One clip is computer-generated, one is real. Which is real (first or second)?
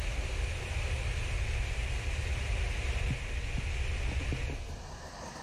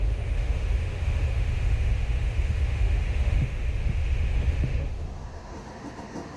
first